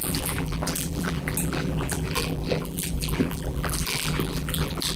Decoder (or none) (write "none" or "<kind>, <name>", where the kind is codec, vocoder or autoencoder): vocoder, BigVGAN v2